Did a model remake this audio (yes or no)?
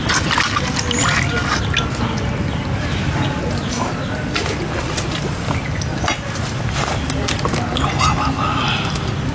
no